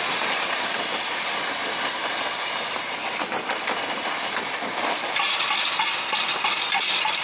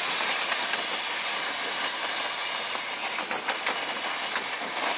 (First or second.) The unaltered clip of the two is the second